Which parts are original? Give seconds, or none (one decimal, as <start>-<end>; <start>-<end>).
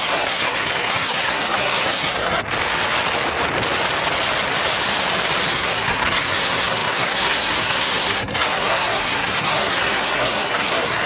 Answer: 2.4-5.5